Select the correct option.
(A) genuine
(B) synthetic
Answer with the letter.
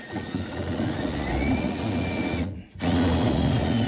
B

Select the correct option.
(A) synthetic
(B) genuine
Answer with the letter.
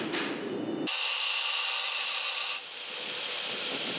B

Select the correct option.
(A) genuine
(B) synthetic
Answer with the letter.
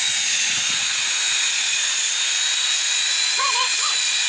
B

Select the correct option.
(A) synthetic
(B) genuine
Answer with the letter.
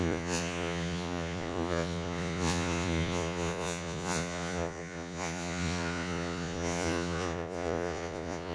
A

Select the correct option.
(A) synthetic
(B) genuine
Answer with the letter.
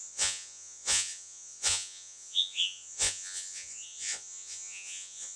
A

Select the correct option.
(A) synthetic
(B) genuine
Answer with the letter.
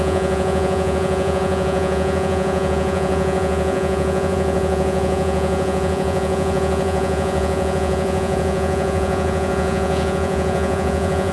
A